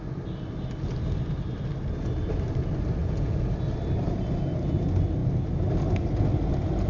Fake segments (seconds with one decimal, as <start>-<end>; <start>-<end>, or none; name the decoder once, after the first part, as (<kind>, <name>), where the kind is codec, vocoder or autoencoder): 3.0-3.5 (vocoder, Vocos)